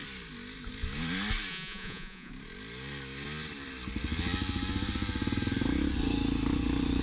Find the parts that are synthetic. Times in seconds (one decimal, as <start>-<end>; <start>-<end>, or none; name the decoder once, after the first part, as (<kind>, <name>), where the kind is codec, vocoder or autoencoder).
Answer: 1.5-2.3 (vocoder, Vocos)